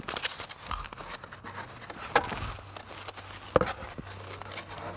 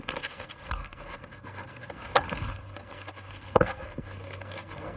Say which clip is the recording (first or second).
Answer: first